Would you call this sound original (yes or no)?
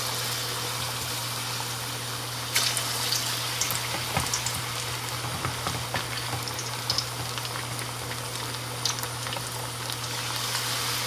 yes